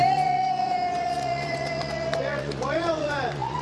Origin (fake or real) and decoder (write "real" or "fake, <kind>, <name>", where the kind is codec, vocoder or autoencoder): fake, vocoder, Vocos